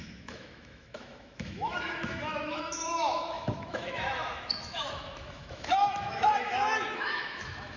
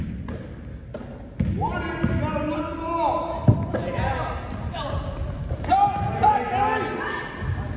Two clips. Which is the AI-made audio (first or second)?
first